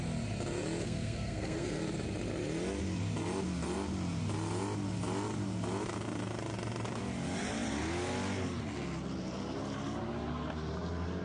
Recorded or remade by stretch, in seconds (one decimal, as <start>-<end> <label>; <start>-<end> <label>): 0.0-0.8 recorded; 0.8-1.8 remade; 1.8-11.2 recorded